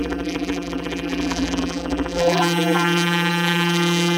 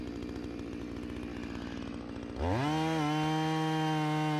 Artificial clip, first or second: first